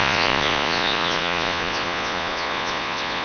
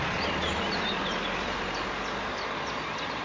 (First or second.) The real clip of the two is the second